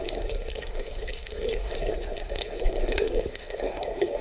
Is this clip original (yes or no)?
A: no